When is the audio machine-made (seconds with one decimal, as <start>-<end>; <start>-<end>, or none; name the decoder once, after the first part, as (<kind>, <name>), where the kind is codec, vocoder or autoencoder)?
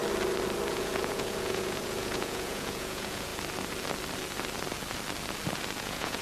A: 0.7-3.3 (vocoder, Vocos); 5.8-6.2